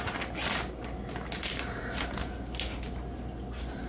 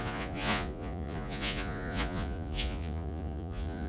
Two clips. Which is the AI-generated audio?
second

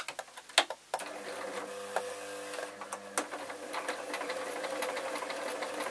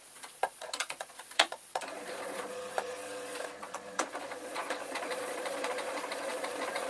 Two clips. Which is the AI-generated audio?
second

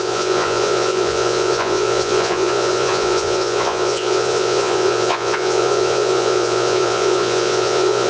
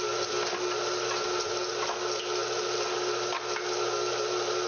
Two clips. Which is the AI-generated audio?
first